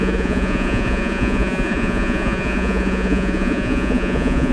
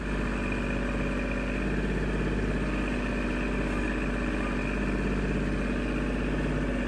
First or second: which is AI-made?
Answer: first